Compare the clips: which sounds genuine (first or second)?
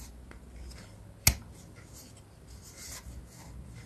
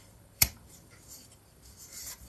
first